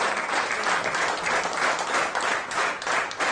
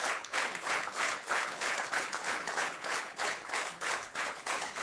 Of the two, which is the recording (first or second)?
first